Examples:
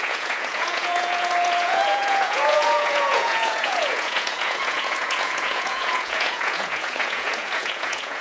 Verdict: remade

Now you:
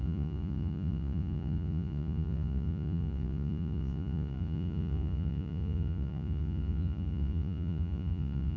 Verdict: remade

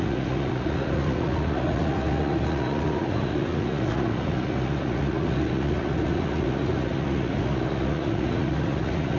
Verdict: remade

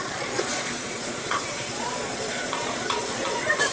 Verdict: remade